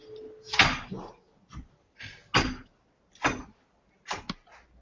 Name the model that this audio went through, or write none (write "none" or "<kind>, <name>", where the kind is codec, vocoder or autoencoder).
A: none